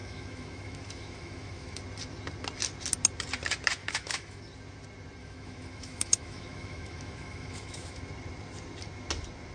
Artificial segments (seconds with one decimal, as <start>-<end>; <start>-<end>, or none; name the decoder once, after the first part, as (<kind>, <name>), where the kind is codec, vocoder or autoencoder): 0.0-1.8 (autoencoder, DAC-VAE); 3.8-4.4; 5.2-8.0